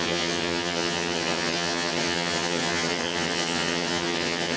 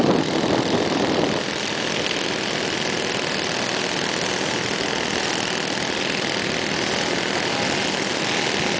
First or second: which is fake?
first